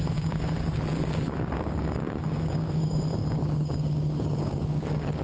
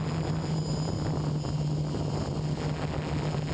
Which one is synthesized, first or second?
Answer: first